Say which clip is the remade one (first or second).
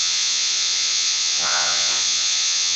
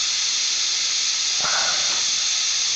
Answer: first